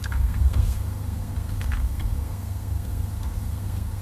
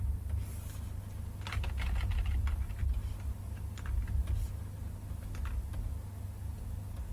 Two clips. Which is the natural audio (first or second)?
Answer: second